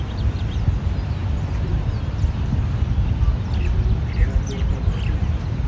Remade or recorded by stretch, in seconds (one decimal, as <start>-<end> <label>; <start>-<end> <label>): 0.0-5.7 recorded